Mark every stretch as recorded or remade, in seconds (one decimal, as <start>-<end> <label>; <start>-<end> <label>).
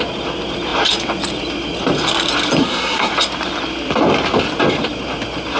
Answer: 0.0-2.6 recorded; 2.6-3.1 remade; 3.1-5.6 recorded